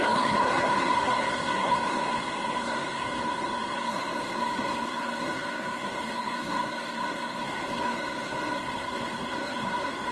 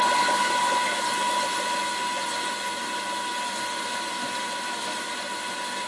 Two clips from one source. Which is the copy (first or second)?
first